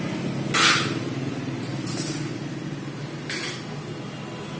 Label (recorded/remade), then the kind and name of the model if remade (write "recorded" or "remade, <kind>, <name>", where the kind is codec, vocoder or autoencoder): recorded